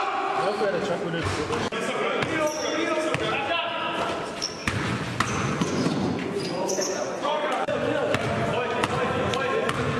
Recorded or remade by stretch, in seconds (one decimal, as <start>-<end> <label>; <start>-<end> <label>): 0.0-4.6 recorded; 4.6-8.1 remade; 8.1-10.0 recorded